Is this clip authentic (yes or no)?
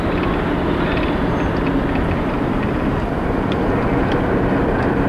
yes